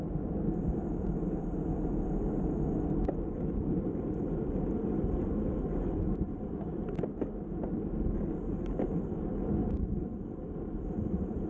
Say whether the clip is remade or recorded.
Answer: recorded